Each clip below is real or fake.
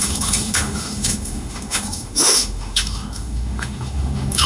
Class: fake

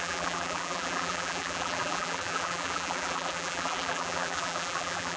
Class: fake